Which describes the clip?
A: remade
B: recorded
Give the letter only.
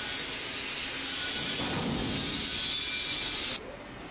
B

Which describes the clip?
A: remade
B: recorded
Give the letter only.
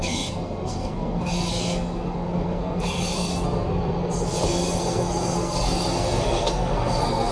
A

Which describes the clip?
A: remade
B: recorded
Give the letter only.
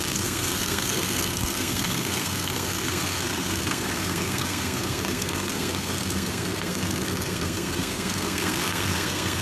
A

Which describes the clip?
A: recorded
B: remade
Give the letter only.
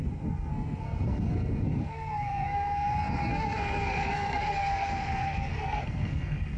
B